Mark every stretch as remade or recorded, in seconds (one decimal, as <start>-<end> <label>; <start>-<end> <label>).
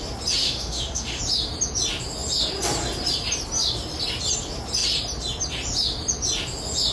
0.0-0.4 recorded; 0.4-1.2 remade; 1.2-6.9 recorded